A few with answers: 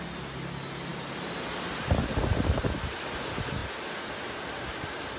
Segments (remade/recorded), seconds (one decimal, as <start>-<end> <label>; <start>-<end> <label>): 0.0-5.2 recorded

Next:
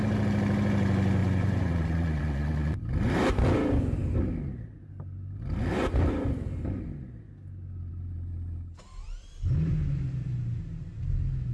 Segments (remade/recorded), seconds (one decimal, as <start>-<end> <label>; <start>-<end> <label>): 0.0-1.2 recorded; 1.2-2.8 remade; 2.8-11.5 recorded

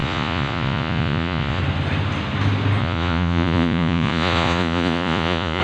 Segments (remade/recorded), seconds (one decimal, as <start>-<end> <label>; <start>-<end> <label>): 0.0-1.6 remade; 1.6-2.8 recorded; 2.8-5.6 remade

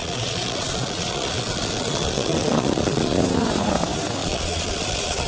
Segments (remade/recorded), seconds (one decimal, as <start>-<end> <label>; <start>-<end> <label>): 0.0-3.2 remade; 3.2-4.2 recorded; 4.2-5.3 remade

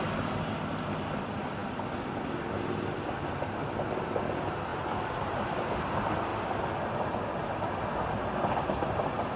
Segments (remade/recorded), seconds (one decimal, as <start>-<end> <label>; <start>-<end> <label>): 0.0-9.4 recorded

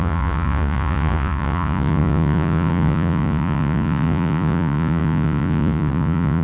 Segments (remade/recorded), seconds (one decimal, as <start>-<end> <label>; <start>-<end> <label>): 0.0-6.4 remade

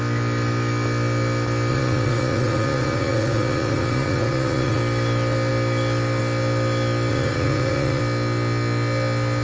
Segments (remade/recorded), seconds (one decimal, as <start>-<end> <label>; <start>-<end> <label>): 0.0-1.7 recorded; 1.7-4.8 remade; 4.8-7.1 recorded; 7.1-8.0 remade; 8.0-9.4 recorded

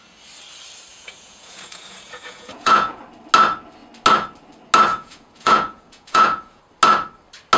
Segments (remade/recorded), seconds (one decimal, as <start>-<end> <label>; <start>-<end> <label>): 0.0-0.9 recorded; 0.9-3.0 remade; 3.0-4.9 recorded; 4.9-6.6 remade; 6.6-7.6 recorded